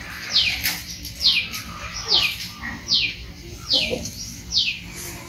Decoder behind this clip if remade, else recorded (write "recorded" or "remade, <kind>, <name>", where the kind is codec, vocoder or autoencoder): recorded